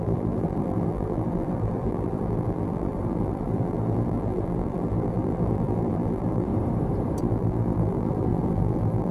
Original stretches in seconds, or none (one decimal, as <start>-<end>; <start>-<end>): 6.5-7.2